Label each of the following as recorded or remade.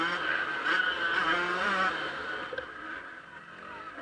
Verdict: recorded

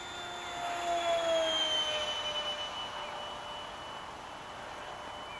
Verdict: recorded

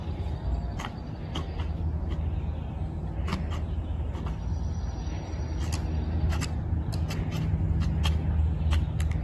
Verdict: recorded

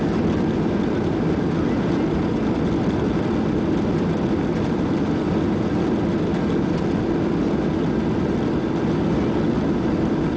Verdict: recorded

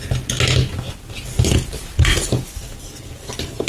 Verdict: recorded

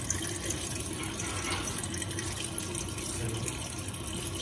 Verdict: recorded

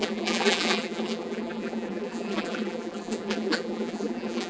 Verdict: remade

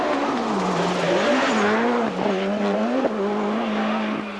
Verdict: recorded